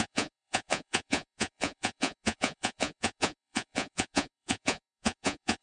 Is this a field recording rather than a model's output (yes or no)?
no